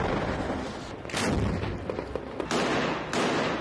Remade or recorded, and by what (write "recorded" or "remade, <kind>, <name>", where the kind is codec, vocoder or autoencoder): recorded